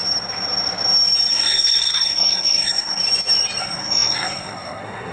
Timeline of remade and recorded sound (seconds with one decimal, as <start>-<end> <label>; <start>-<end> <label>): 0.0-1.3 recorded; 1.3-3.0 remade; 3.0-3.6 recorded; 3.6-5.1 remade